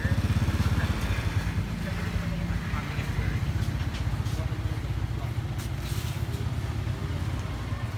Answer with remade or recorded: recorded